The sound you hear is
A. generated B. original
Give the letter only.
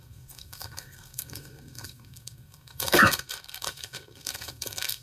A